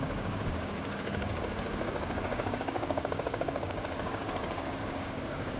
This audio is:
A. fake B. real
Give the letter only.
A